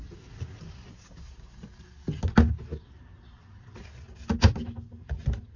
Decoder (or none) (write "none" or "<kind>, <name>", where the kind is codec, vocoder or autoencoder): none